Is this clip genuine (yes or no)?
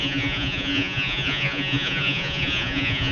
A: no